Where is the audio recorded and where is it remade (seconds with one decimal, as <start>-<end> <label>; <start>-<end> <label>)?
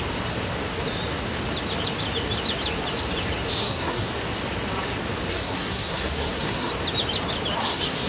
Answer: 0.0-3.6 recorded; 3.6-4.1 remade; 4.1-5.3 recorded; 5.3-6.7 remade; 6.7-7.6 recorded; 7.6-8.1 remade